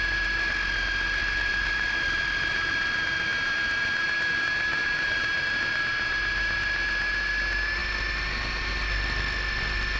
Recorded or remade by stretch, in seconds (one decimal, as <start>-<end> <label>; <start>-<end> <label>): 0.0-1.2 recorded; 1.2-5.8 remade; 5.8-10.0 recorded